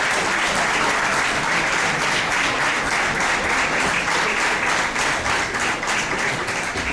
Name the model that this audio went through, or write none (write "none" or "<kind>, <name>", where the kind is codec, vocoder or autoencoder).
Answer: vocoder, BigVGAN v2